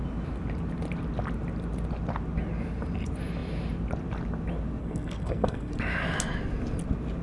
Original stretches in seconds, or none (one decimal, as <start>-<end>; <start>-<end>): 0.0-4.8; 5.7-7.2